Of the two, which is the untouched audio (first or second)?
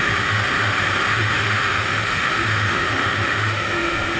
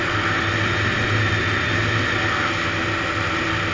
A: second